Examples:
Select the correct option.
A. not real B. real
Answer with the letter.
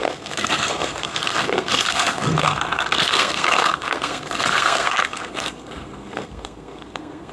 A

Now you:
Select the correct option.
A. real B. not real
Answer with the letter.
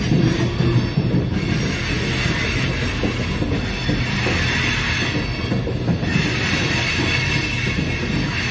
A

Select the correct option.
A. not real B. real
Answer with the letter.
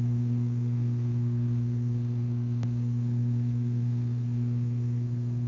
A